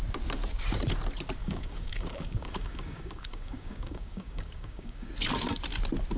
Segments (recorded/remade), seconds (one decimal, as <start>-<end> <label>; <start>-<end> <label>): 0.0-1.4 recorded; 1.4-5.1 remade; 5.1-6.2 recorded